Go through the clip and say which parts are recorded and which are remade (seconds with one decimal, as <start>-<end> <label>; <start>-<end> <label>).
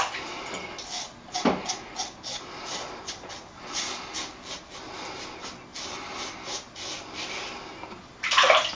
0.0-8.7 recorded